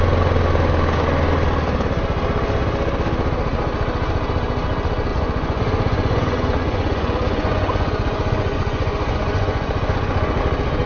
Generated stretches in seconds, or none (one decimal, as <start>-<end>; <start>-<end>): 5.1-10.4